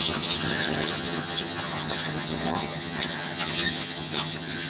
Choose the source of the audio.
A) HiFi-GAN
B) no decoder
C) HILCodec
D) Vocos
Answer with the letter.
A